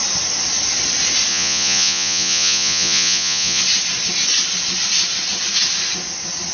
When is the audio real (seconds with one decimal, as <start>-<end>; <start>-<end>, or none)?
0.0-1.3; 3.6-6.5